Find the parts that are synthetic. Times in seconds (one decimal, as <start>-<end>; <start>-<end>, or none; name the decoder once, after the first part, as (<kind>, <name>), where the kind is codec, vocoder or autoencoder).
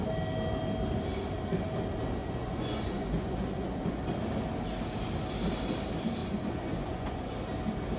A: 2.2-4.0 (vocoder, Vocos); 6.2-7.3